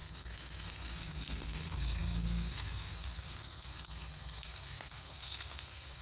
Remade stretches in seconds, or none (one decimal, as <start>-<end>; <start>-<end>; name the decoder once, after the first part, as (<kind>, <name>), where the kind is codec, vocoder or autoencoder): 0.0-6.0 (codec, SNAC)